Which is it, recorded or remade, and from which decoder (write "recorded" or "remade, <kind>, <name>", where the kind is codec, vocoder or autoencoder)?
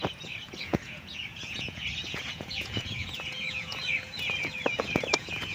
remade, vocoder, Vocos